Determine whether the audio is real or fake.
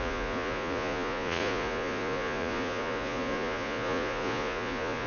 fake